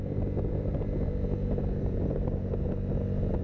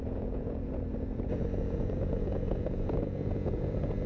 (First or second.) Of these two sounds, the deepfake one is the second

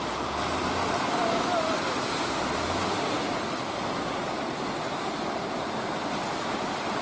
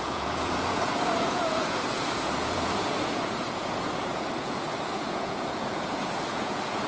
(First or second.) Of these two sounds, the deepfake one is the second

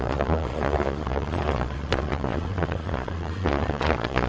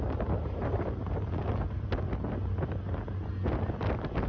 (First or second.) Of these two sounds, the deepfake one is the first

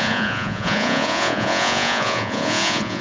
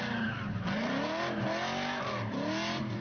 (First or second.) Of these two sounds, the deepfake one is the first